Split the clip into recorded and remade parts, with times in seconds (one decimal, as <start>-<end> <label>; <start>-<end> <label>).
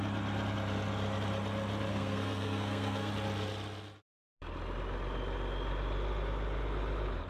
0.0-1.9 recorded; 1.9-3.1 remade; 3.1-7.3 recorded